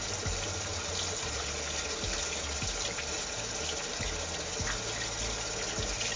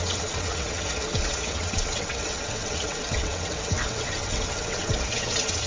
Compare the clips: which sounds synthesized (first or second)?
second